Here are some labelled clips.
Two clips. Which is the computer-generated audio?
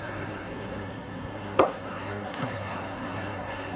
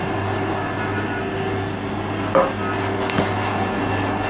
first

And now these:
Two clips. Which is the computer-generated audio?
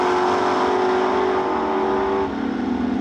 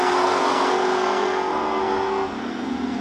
second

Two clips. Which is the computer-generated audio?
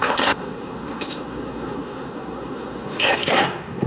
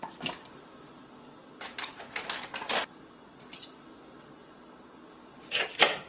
first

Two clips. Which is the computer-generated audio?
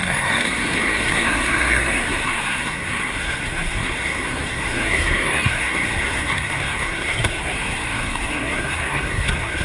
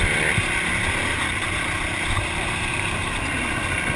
first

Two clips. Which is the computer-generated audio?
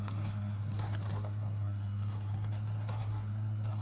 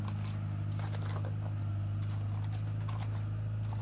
first